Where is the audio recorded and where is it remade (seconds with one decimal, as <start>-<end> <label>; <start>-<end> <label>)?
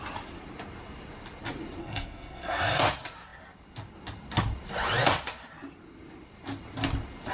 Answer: 0.0-1.8 recorded; 1.8-2.8 remade; 2.8-7.3 recorded